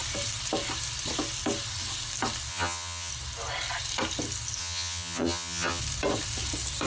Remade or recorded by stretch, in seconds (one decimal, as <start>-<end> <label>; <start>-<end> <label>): 0.0-2.5 recorded; 2.5-3.1 remade; 3.1-4.6 recorded; 4.6-5.8 remade; 5.8-6.9 recorded